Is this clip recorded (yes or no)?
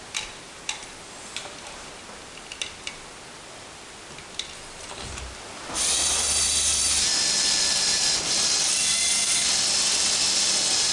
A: yes